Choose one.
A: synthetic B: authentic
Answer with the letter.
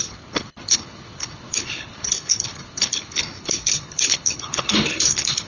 A